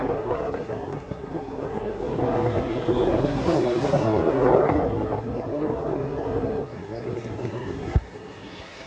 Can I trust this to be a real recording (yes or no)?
no